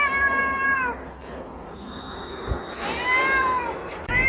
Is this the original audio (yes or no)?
yes